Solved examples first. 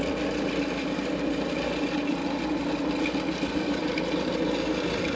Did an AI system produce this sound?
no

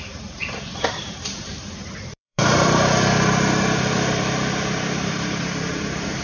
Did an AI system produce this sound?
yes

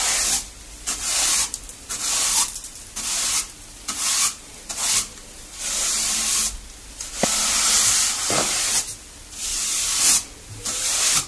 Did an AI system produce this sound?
no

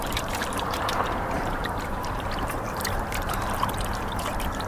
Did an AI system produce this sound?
yes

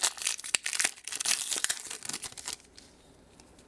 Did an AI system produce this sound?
yes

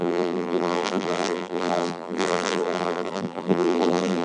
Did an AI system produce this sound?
yes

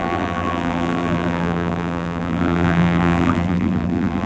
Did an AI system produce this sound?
yes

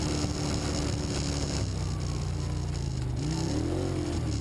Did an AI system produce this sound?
no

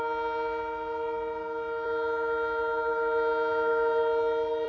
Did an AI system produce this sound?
no